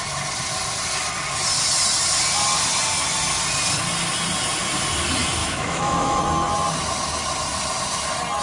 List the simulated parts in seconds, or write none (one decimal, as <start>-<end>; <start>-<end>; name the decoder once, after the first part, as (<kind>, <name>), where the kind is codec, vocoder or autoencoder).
5.4-6.2 (autoencoder, DAC-VAE)